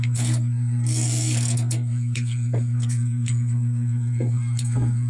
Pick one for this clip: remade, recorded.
remade